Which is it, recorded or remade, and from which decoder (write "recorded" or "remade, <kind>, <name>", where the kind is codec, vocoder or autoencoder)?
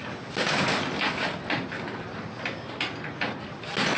recorded